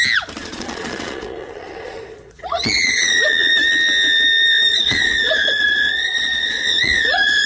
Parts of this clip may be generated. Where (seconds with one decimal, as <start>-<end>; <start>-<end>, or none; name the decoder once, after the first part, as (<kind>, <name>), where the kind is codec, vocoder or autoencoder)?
0.4-3.5 (vocoder, Vocos); 4.7-7.5